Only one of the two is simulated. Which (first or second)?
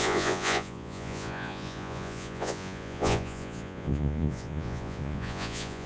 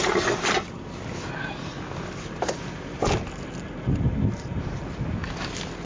first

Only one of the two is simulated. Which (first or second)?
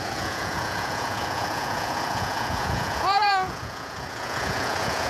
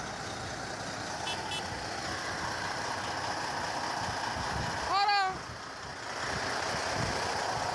first